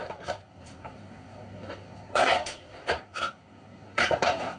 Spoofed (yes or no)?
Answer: yes